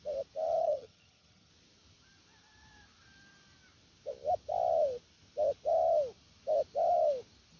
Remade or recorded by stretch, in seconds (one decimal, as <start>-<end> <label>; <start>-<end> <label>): 0.0-0.6 recorded; 0.6-1.5 remade; 1.5-7.6 recorded